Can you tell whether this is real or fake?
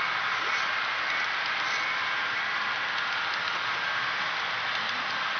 real